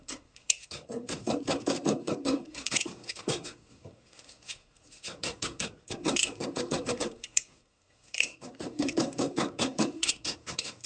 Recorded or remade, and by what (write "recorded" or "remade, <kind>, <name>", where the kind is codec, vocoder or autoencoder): remade, codec, SNAC